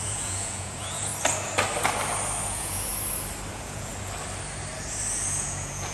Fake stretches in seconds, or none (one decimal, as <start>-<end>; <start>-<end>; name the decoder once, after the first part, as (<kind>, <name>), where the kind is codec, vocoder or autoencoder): 0.0-1.1 (vocoder, Vocos); 2.4-2.9; 3.5-3.9; 5.1-5.9